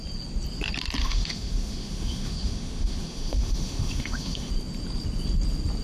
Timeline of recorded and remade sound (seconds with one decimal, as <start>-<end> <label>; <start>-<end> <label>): 0.0-1.0 recorded; 1.0-4.5 remade; 4.5-5.8 recorded